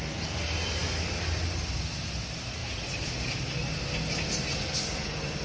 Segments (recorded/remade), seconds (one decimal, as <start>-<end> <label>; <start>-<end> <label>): 0.0-5.4 recorded